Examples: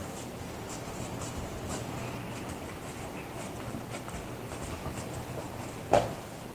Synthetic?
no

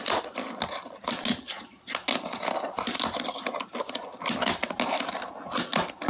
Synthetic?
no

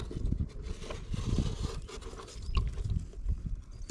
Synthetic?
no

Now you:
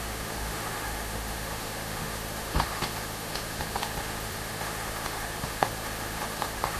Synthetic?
yes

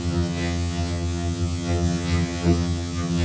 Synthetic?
yes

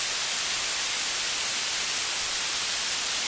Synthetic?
no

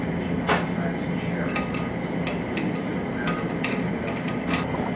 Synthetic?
no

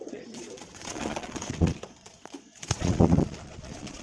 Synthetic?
yes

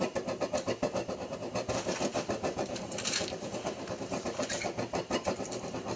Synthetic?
yes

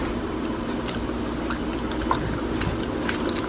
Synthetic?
no